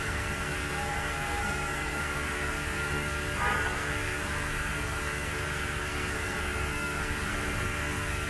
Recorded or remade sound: remade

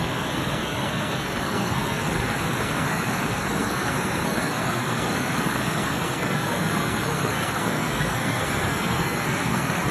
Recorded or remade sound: remade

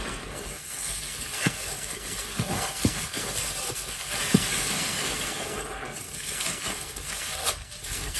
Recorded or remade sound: remade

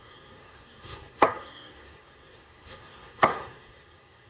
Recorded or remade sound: remade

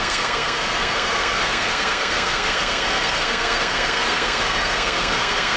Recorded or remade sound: remade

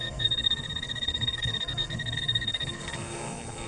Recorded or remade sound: remade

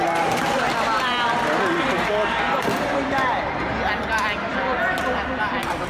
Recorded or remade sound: recorded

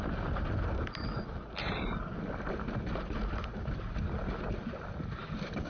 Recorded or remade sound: recorded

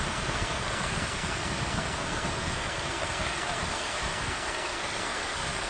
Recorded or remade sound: remade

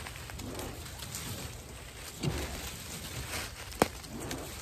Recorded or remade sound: recorded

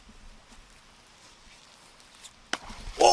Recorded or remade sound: recorded